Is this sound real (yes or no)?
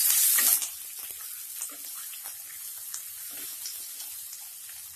yes